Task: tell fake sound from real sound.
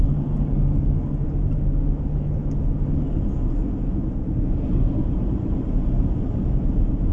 real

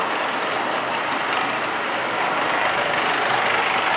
real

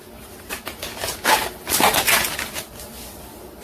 real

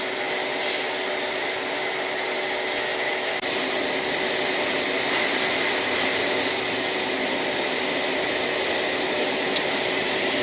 real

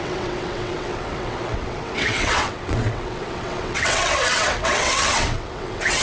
fake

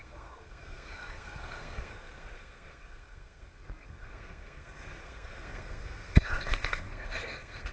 fake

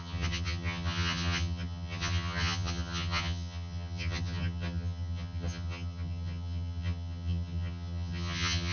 fake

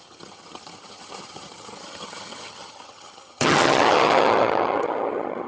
fake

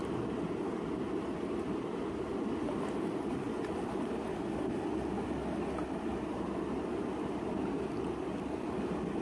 real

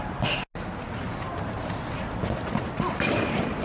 real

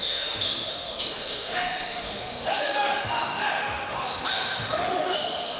fake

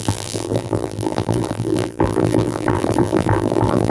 fake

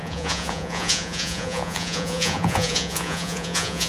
fake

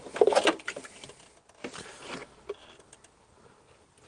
real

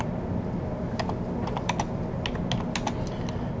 real